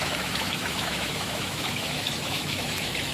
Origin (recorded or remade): remade